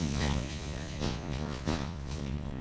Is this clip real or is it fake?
fake